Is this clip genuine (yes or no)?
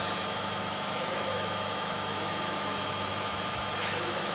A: no